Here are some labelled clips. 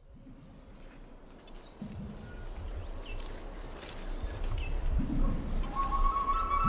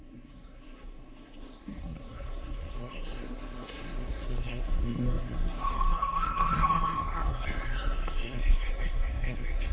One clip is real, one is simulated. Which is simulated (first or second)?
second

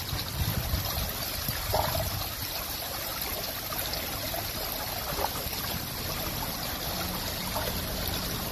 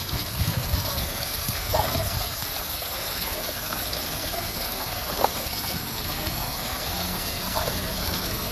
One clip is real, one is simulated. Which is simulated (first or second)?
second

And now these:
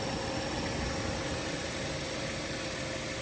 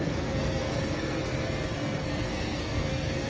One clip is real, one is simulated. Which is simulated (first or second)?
second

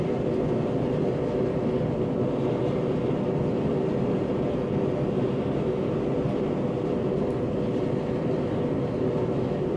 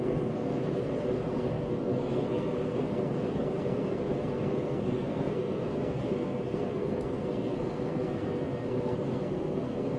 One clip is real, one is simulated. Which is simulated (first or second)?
second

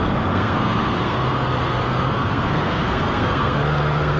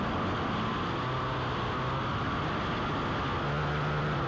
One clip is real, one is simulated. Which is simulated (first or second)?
first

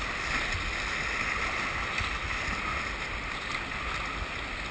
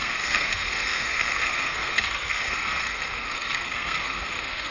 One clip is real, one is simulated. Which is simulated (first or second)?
second